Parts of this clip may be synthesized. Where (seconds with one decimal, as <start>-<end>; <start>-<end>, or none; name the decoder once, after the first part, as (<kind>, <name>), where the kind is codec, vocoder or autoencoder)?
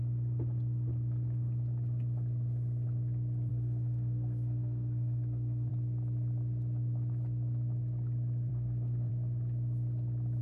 3.5-5.7 (codec, SNAC); 8.5-9.1